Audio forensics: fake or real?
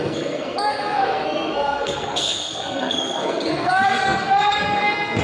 fake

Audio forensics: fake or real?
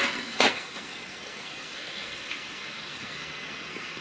fake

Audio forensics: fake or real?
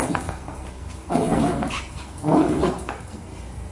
fake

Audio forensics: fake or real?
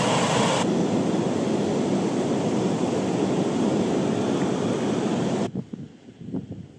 real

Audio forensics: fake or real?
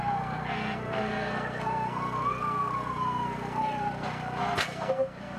fake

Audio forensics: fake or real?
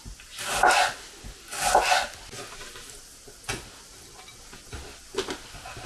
real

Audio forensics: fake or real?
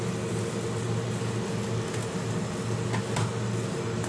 real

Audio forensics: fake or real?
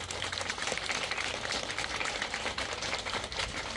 real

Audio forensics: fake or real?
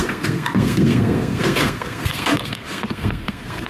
fake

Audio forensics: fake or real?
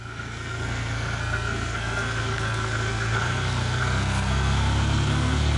fake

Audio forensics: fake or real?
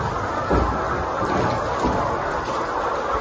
real